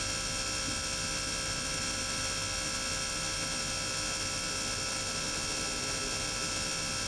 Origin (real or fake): real